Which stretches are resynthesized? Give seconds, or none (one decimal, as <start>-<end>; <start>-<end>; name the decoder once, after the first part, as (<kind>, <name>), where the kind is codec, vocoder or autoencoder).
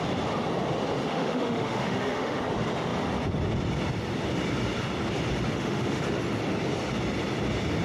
1.1-2.4 (autoencoder, DAC-VAE); 5.5-6.0